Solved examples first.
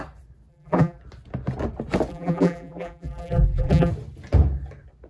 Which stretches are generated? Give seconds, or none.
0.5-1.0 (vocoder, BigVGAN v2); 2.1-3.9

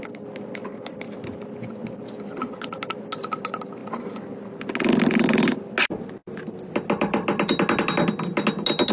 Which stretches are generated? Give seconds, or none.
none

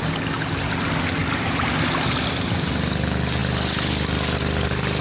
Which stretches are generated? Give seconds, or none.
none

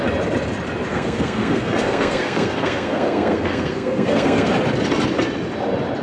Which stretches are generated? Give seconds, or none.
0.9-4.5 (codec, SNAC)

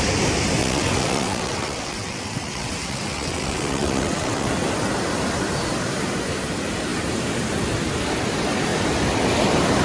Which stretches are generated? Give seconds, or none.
0.6-4.5 (vocoder, WaveNeXt)

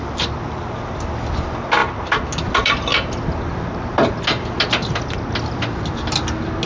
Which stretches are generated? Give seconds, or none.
none

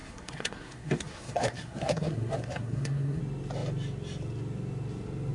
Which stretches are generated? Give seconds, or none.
0.0-3.2 (codec, SNAC)

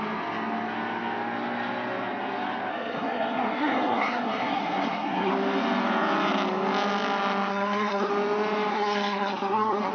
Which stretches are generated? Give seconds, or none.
2.7-5.3 (codec, SNAC); 7.5-8.1; 8.7-9.9